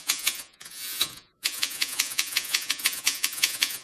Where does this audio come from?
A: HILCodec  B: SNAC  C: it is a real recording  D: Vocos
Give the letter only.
D